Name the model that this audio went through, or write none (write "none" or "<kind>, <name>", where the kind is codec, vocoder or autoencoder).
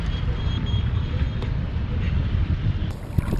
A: vocoder, BigVGAN v2